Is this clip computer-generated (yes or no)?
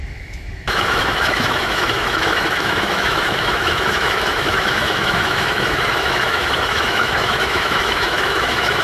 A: yes